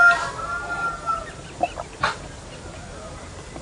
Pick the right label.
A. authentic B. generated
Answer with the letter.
A